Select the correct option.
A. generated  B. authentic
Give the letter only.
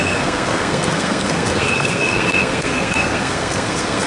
A